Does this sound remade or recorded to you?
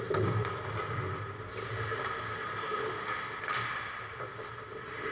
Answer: recorded